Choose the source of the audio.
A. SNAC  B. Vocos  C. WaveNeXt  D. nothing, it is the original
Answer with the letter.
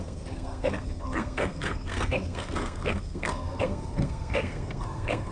A